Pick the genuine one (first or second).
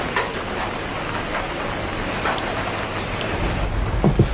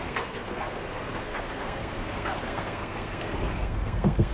first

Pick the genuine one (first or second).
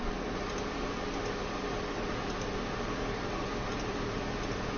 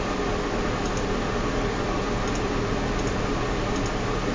second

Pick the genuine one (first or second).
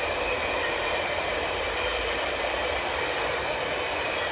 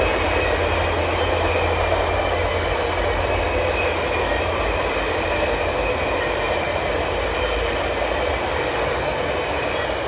second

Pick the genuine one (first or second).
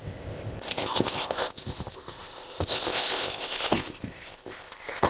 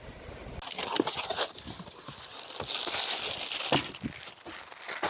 second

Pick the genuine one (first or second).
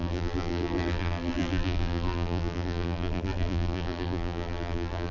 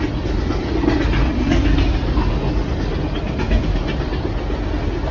second